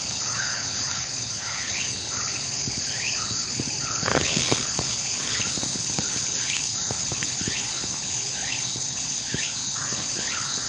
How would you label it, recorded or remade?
remade